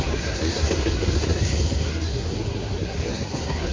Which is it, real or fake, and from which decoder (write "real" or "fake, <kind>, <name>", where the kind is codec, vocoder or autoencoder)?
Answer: fake, codec, SNAC